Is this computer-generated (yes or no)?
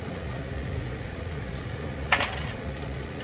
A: yes